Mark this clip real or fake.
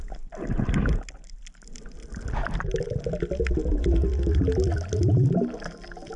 real